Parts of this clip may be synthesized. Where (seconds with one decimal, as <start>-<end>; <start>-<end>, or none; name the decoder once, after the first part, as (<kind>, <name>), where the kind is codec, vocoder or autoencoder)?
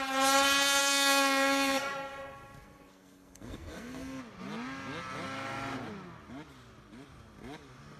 0.8-4.2 (codec, SNAC)